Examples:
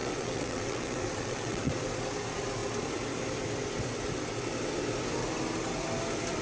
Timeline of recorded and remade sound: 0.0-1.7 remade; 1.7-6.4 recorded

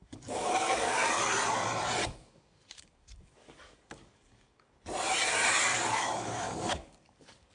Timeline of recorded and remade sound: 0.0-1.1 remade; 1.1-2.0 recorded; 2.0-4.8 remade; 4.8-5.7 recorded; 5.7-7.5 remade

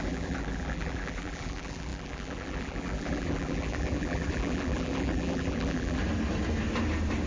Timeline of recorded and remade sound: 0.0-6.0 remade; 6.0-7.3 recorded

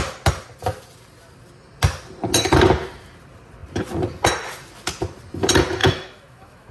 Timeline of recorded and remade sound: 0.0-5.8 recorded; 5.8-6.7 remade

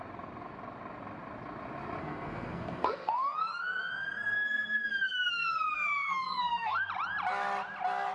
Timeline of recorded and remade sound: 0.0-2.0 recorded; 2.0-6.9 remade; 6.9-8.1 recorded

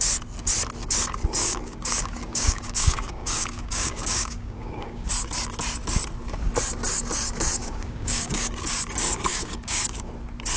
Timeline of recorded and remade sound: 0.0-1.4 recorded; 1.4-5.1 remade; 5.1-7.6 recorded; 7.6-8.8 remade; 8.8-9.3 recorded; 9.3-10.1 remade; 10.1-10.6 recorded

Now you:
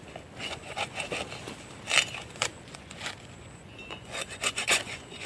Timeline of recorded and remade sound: 0.0-0.4 recorded; 0.4-1.0 remade; 1.0-2.2 recorded; 2.2-5.3 remade

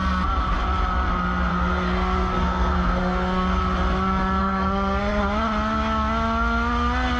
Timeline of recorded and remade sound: 0.0-1.5 recorded; 1.5-3.6 remade; 3.6-4.4 recorded; 4.4-5.2 remade; 5.2-7.2 recorded